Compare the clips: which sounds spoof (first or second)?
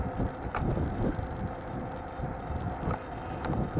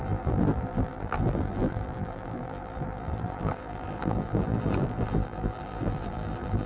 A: second